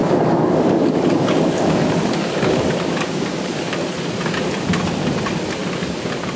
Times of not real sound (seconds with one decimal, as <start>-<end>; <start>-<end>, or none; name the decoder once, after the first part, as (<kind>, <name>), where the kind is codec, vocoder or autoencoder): 0.0-3.8 (codec, DAC); 5.6-6.4